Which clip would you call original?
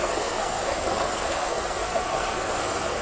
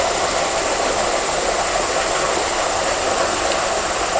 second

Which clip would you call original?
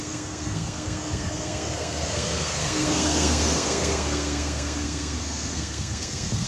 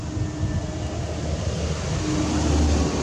second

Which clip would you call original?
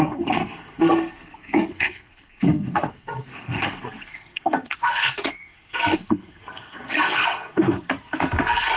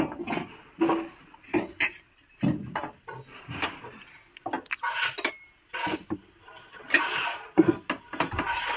second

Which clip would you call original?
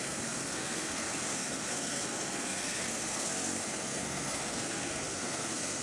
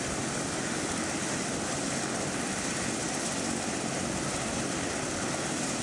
second